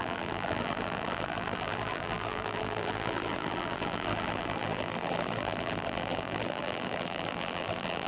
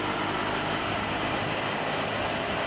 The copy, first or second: first